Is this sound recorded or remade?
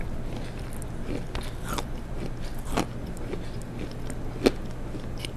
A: recorded